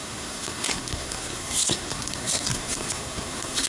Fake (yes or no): yes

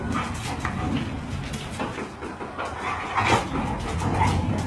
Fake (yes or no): no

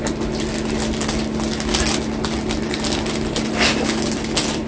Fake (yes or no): no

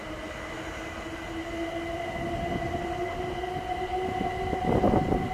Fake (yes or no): no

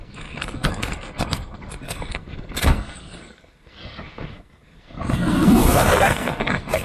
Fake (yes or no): yes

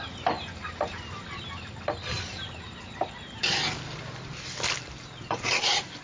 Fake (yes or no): no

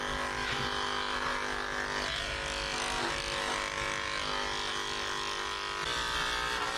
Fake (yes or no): no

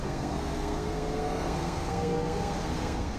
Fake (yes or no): yes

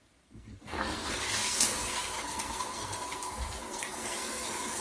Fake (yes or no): yes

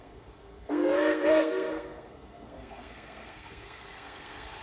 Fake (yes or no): yes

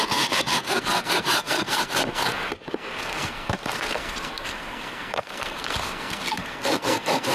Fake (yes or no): yes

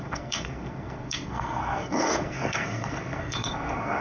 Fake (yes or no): yes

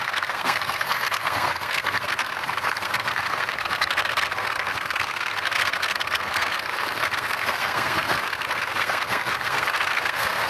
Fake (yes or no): yes